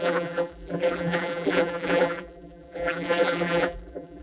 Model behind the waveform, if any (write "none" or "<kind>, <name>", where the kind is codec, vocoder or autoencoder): vocoder, BigVGAN v2